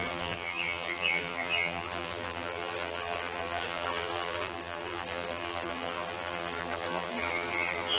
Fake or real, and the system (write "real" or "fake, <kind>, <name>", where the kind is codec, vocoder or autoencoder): fake, vocoder, BigVGAN v2